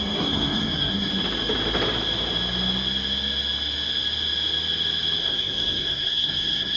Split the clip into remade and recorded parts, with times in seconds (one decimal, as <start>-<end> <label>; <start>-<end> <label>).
0.0-1.1 remade; 1.1-5.2 recorded; 5.2-6.8 remade